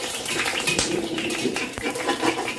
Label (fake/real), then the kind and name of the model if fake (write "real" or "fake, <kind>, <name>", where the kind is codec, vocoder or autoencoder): fake, vocoder, BigVGAN v2